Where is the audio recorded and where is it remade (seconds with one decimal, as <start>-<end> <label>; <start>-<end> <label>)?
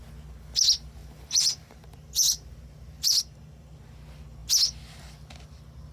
0.0-1.0 recorded; 1.0-3.2 remade; 3.2-5.9 recorded